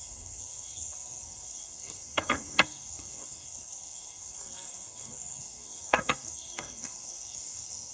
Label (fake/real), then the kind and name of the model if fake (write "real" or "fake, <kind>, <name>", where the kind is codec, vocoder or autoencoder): fake, codec, SNAC